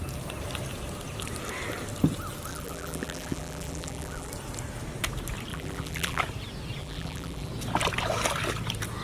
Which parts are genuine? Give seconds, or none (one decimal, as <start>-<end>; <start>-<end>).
0.0-2.5; 4.3-5.5; 6.2-6.8; 7.5-9.0